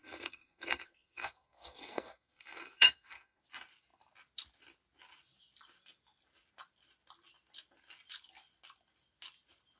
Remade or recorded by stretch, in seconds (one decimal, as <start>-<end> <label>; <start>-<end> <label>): 0.0-3.4 remade; 3.4-9.8 recorded